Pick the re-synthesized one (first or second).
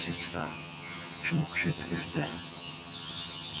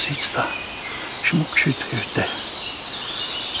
first